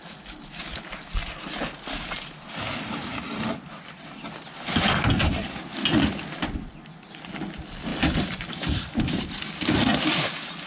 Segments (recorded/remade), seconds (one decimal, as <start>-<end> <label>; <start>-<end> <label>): 0.0-10.7 recorded